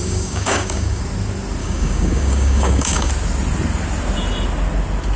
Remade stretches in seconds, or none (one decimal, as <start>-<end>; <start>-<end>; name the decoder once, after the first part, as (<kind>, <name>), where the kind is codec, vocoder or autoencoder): 0.0-1.0 (codec, DAC); 1.6-3.1